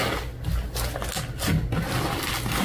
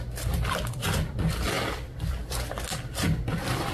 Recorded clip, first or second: first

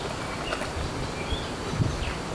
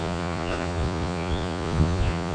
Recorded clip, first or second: first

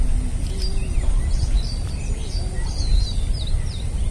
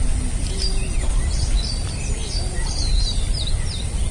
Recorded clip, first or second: first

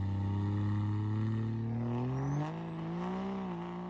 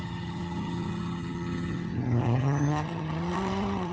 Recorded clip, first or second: first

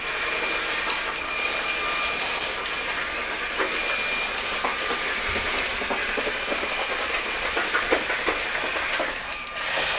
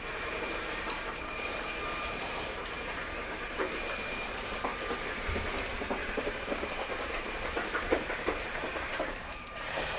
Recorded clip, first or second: first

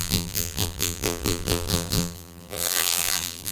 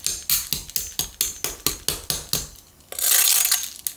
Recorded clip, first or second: second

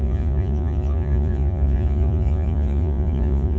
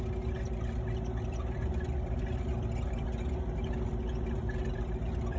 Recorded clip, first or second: second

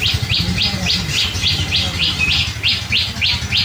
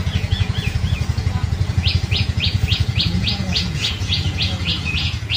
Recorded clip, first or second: first